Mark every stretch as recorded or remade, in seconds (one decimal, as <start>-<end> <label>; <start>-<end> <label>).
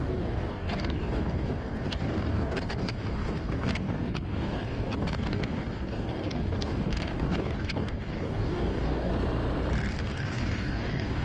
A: 0.0-9.1 remade; 9.1-9.9 recorded; 9.9-11.2 remade